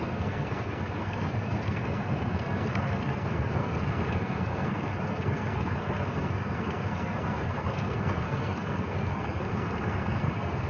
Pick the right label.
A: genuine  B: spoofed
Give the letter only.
B